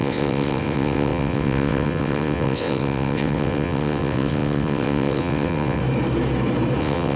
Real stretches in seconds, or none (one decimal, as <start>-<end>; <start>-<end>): 5.8-6.8